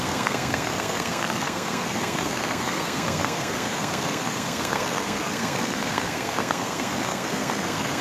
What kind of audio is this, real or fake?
fake